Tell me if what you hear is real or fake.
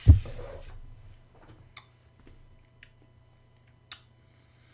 real